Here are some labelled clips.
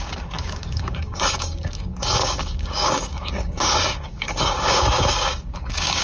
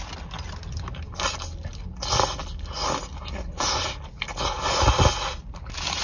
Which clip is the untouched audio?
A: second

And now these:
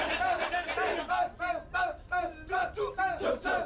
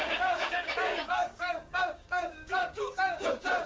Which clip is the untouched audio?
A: first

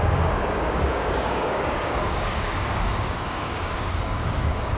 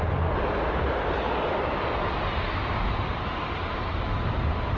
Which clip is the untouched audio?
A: second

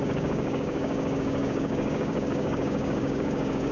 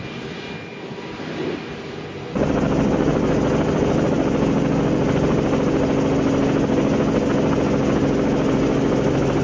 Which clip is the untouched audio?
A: second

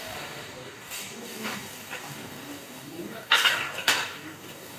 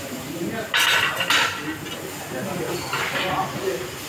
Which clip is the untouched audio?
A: second